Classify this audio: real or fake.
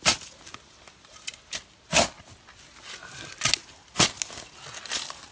real